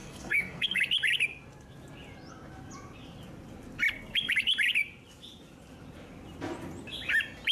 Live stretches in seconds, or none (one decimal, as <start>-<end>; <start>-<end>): 0.8-7.5